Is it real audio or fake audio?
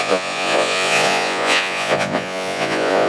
fake